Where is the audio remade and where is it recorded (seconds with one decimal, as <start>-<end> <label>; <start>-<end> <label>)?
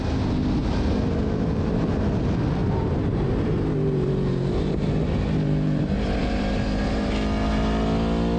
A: 0.0-0.6 recorded; 0.6-1.9 remade; 1.9-2.6 recorded; 2.6-5.8 remade; 5.8-6.2 recorded; 6.2-7.1 remade; 7.1-8.4 recorded